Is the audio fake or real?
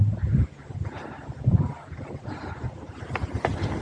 real